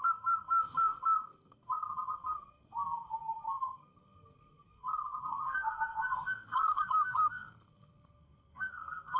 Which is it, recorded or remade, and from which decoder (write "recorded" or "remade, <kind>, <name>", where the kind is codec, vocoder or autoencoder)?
remade, codec, SNAC